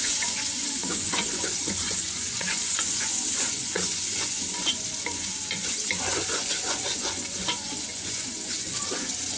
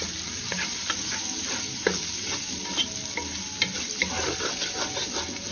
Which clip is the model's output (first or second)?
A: first